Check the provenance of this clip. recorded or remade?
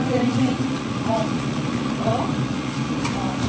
remade